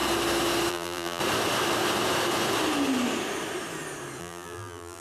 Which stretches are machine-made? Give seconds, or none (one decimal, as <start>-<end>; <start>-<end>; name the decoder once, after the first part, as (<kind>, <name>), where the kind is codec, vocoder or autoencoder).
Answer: 0.7-1.2 (vocoder, BigVGAN v2); 4.2-5.0